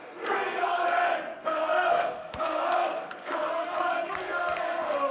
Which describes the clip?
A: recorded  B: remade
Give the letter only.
B